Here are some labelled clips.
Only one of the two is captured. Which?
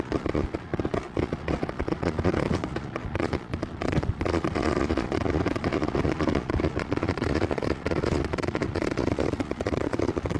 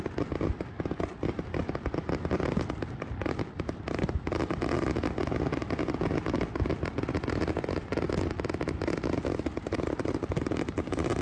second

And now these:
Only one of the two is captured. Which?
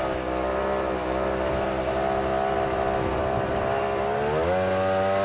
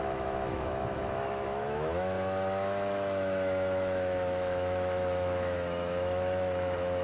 first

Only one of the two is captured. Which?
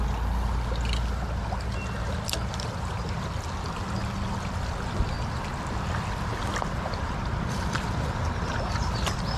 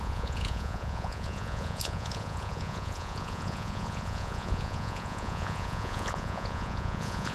first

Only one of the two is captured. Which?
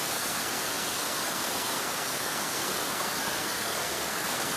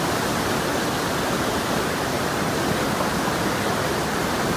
second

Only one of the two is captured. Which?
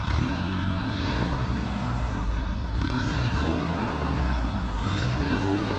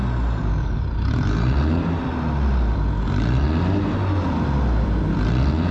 second